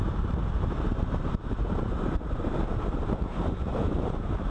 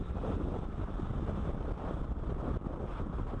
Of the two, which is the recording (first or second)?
second